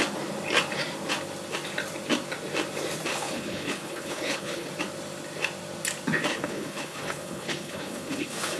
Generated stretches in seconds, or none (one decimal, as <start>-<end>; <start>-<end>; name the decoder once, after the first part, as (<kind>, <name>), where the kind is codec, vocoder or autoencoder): 3.1-4.7 (codec, HILCodec); 6.3-8.6